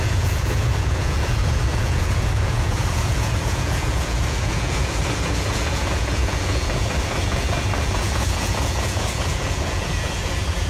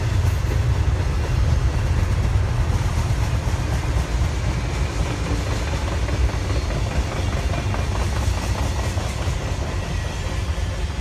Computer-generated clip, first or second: first